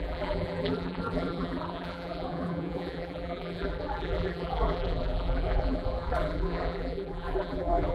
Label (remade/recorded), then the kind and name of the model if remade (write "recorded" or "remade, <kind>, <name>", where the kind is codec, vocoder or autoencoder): remade, vocoder, BigVGAN v2